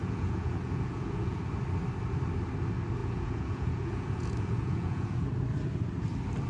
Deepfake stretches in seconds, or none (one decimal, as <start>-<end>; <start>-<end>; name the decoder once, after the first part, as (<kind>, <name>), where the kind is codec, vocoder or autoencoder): 0.0-1.4 (vocoder, Vocos); 3.0-5.3